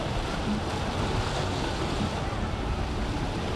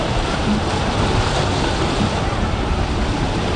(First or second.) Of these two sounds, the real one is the first